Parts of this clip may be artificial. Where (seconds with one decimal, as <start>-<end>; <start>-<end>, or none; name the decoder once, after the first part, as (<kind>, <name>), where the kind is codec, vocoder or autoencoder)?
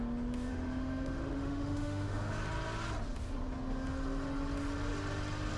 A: 0.5-2.3 (autoencoder, DAC-VAE)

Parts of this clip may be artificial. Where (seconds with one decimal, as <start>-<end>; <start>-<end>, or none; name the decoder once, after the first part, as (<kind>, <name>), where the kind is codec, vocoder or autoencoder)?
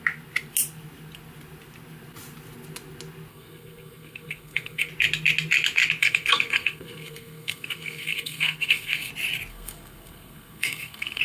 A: 3.3-4.9 (codec, SNAC); 6.0-9.1; 9.5-11.2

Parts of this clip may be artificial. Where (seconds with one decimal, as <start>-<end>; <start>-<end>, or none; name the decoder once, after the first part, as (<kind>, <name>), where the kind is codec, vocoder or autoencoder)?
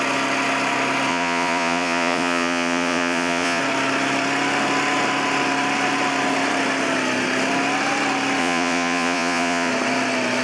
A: 1.1-3.6 (vocoder, Vocos); 8.4-9.7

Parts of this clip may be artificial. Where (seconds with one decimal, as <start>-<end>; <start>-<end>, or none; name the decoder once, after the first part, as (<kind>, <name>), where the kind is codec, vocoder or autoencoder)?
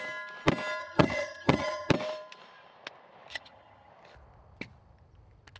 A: 0.8-1.9 (vocoder, HiFi-GAN); 3.3-3.9